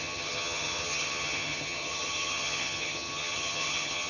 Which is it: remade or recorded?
remade